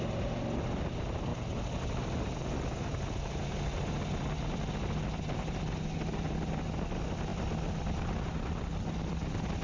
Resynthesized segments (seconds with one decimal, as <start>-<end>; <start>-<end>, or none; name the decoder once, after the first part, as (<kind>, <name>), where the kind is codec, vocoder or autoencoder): none